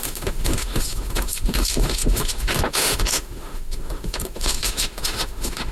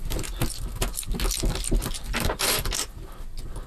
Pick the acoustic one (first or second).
second